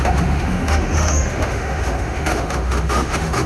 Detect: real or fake fake